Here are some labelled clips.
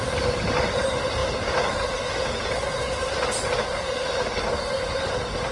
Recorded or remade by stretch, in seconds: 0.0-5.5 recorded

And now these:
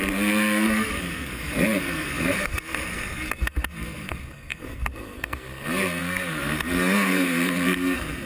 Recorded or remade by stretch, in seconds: 0.0-8.3 remade

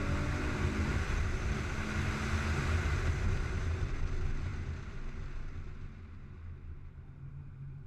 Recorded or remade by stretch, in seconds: 0.0-0.9 recorded; 0.9-1.7 remade; 1.7-2.6 recorded; 2.6-3.8 remade; 3.8-7.9 recorded

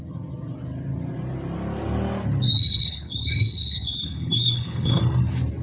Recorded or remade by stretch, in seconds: 0.0-2.6 recorded; 2.6-5.0 remade; 5.0-5.6 recorded

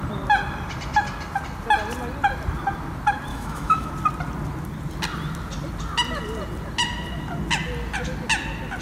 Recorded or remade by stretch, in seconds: 0.0-3.3 recorded; 3.3-3.9 remade; 3.9-8.8 recorded

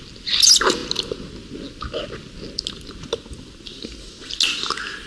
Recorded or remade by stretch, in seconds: 0.0-5.1 recorded

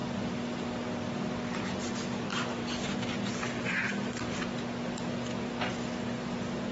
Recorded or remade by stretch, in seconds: 0.0-6.7 recorded